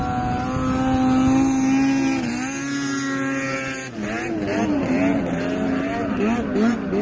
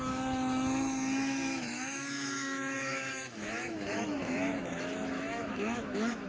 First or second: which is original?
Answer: first